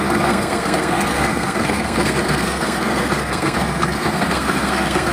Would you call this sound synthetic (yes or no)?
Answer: yes